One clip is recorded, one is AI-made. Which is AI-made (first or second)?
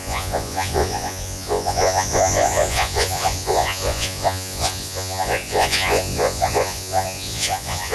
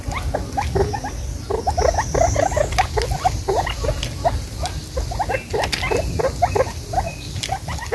first